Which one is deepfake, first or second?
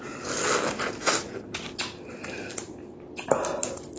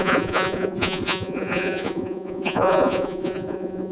second